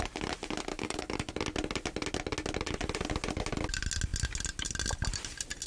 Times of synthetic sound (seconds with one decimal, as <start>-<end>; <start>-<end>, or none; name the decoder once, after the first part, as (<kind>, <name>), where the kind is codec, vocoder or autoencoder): 0.7-1.3 (codec, DAC)